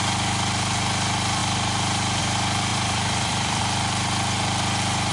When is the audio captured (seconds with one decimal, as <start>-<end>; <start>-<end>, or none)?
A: 0.0-2.7; 3.6-5.1